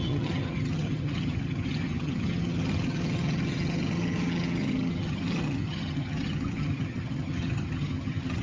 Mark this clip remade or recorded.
remade